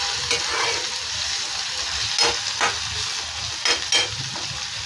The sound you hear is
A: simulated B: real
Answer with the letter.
B